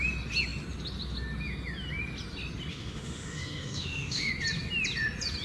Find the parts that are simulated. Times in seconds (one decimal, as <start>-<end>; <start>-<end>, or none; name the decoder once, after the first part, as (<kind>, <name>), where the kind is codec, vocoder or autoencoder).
2.7-4.3 (autoencoder, DAC-VAE)